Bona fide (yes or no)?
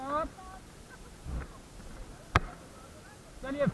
yes